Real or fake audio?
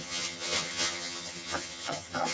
fake